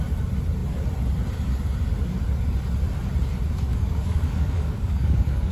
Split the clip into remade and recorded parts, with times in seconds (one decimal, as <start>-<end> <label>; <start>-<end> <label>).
0.0-3.7 recorded; 3.7-5.5 remade